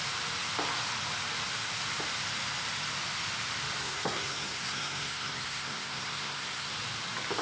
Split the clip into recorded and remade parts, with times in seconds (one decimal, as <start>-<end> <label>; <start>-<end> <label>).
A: 0.0-3.8 recorded; 3.8-6.7 remade; 6.7-7.4 recorded